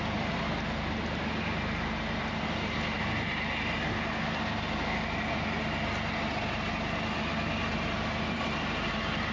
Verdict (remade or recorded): recorded